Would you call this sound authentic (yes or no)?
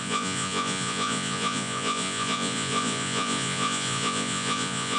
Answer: no